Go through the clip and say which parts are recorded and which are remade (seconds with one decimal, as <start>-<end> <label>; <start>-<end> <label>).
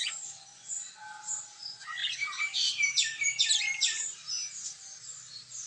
0.0-1.0 remade; 1.0-1.5 recorded; 1.5-2.0 remade; 2.0-5.7 recorded